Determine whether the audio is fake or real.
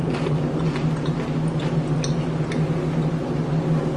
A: real